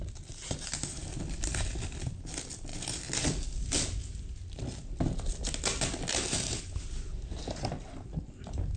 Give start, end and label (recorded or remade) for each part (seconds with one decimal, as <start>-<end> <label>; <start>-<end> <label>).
0.0-8.8 recorded

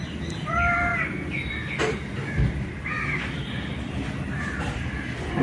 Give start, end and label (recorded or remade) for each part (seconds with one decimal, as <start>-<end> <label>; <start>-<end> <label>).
0.0-5.4 recorded

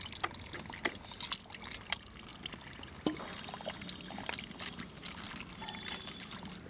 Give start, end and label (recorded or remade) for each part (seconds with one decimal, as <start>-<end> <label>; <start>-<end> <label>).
0.0-6.7 recorded

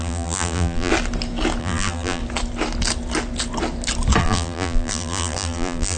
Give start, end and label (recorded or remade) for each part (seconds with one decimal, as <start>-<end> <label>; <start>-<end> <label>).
0.0-0.9 remade; 0.9-1.6 recorded; 1.6-2.2 remade; 2.2-4.2 recorded; 4.2-6.0 remade